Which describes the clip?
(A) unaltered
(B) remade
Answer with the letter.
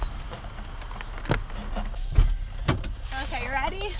A